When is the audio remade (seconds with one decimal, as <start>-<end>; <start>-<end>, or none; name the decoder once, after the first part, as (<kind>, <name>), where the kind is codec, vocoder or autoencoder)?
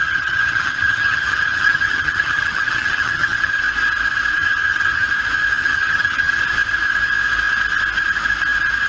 0.0-3.6 (vocoder, HiFi-GAN); 4.4-5.1; 5.6-6.4